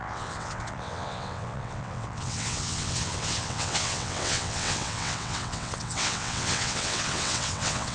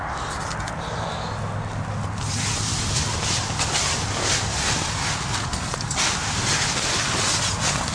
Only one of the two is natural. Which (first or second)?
second